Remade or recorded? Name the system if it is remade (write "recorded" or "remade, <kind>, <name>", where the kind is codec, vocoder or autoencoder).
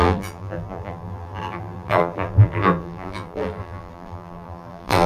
remade, vocoder, BigVGAN v2